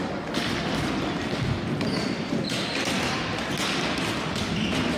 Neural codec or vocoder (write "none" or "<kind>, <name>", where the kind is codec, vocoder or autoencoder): none